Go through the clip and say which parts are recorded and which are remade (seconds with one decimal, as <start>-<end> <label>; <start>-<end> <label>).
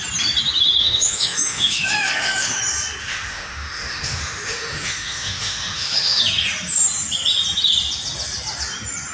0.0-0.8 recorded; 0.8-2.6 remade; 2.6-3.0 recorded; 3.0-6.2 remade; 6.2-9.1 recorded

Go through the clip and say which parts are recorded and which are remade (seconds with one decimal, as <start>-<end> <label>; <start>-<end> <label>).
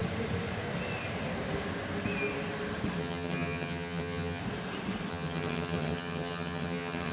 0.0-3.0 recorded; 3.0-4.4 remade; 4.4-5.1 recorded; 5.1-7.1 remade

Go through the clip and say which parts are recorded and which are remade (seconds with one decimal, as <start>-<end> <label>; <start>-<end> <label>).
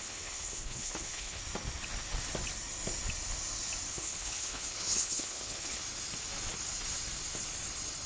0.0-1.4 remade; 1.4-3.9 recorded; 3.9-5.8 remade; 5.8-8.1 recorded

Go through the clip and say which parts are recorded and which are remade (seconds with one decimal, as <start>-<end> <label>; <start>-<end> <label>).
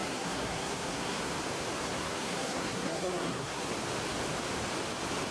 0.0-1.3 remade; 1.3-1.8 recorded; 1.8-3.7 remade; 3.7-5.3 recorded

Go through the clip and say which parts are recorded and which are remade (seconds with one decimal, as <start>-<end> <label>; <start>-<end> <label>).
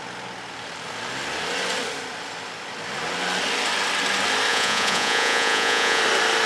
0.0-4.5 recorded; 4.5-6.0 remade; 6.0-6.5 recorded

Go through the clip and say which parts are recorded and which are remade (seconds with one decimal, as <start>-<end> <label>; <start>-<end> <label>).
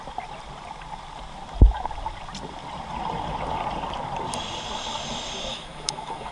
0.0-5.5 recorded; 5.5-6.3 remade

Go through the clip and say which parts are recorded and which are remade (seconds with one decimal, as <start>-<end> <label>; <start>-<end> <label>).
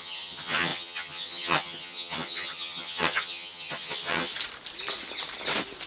0.0-4.3 remade; 4.3-5.9 recorded